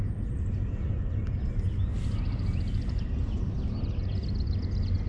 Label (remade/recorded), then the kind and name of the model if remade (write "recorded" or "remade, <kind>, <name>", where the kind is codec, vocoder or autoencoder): recorded